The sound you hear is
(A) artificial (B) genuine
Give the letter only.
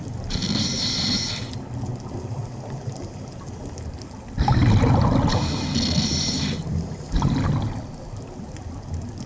B